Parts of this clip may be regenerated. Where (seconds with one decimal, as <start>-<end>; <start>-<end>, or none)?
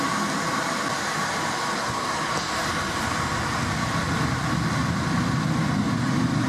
none